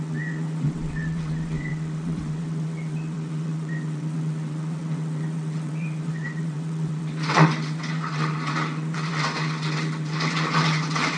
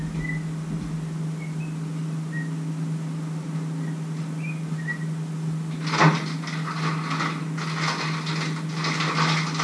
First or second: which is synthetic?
first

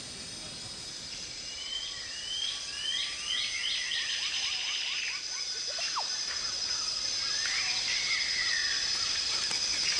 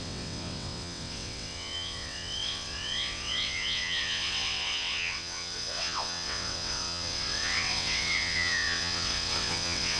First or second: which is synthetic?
second